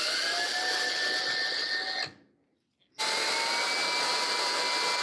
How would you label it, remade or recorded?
recorded